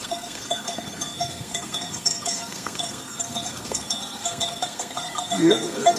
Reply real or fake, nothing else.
fake